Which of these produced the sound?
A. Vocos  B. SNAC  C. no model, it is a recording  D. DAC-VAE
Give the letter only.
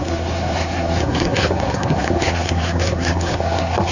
B